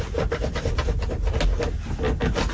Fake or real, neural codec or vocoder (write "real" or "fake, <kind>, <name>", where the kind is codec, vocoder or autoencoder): real